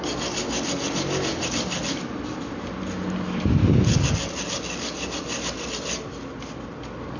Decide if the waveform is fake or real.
real